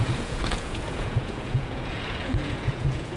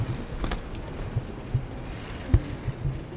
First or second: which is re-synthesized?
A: first